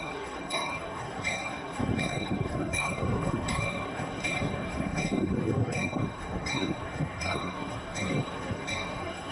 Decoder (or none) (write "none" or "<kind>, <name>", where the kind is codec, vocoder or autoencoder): codec, SNAC